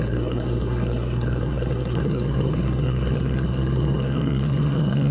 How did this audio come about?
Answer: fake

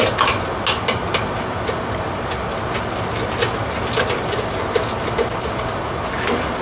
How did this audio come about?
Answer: real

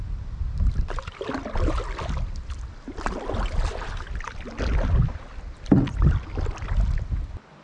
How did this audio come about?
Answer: real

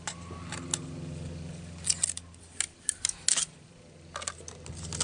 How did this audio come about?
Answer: real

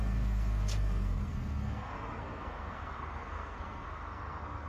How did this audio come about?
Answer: fake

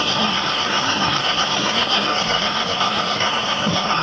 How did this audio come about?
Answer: fake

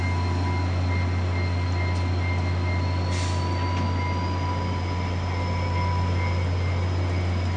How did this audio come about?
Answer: real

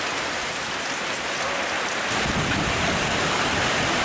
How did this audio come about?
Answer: real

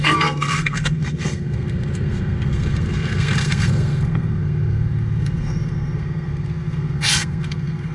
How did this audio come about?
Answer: fake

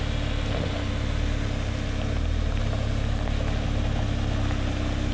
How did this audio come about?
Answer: real